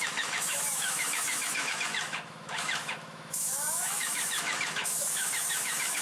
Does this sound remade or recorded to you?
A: remade